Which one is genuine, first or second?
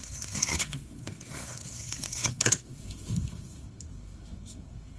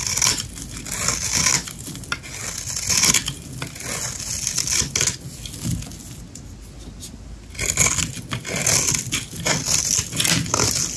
second